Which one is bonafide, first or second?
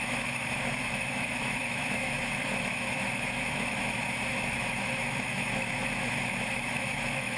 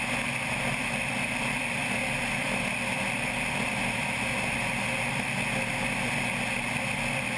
second